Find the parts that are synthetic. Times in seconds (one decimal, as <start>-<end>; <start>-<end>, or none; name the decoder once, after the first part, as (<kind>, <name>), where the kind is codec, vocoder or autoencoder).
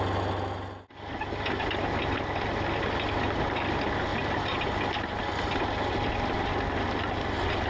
none